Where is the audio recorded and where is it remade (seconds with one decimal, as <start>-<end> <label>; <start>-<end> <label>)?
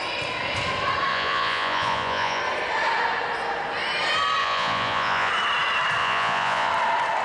0.0-1.1 recorded; 1.1-2.4 remade; 2.4-4.4 recorded; 4.4-5.3 remade; 5.3-6.0 recorded; 6.0-6.7 remade; 6.7-7.2 recorded